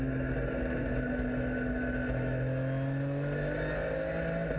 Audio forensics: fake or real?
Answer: real